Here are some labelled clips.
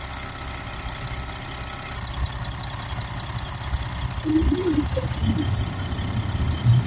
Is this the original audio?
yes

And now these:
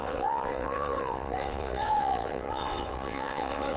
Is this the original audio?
no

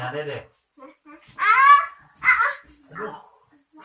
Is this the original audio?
yes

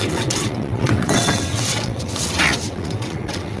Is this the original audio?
no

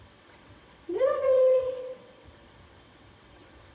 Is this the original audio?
no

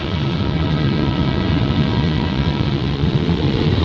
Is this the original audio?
no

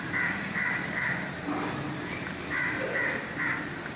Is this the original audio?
yes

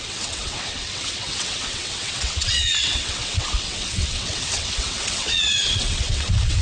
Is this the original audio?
no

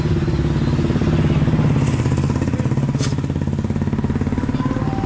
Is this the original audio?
yes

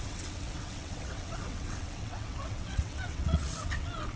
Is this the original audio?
no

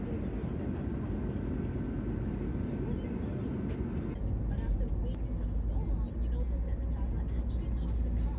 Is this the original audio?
yes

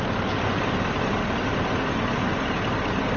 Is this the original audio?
yes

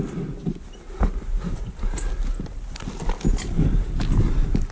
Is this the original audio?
yes